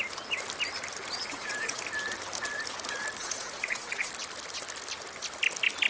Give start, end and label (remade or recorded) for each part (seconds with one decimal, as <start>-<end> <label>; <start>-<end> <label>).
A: 0.0-1.3 recorded; 1.3-1.8 remade; 1.8-3.2 recorded; 3.2-4.1 remade; 4.1-5.9 recorded